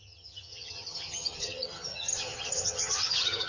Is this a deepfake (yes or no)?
yes